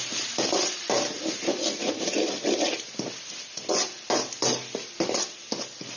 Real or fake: real